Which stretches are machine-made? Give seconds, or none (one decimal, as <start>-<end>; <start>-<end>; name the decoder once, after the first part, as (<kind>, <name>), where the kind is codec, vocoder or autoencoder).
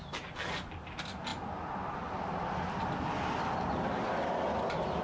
0.0-5.0 (vocoder, BigVGAN v2)